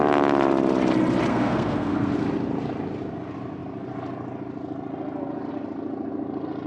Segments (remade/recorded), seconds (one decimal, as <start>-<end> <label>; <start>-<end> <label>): 0.0-1.3 recorded; 1.3-2.1 remade; 2.1-6.7 recorded